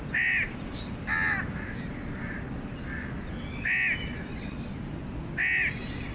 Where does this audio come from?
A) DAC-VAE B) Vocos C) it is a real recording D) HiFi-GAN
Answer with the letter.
C